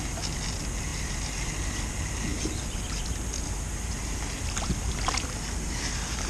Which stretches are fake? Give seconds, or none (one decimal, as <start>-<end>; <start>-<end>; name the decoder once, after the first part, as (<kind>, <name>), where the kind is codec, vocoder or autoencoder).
none

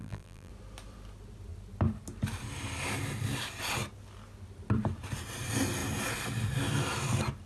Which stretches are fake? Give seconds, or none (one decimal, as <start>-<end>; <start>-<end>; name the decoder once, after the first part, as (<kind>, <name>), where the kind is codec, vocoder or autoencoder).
0.0-0.5 (vocoder, BigVGAN v2)

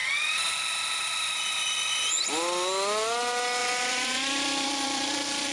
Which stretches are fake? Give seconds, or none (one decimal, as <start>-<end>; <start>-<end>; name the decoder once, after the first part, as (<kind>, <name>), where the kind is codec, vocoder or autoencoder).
3.6-5.5 (vocoder, BigVGAN v2)